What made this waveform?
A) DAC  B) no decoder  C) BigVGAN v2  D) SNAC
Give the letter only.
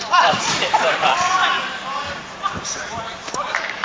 C